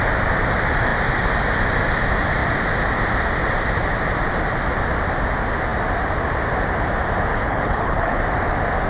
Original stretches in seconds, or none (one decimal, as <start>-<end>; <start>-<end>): 0.0-7.3; 8.2-8.9